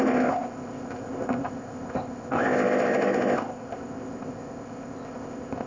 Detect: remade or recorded remade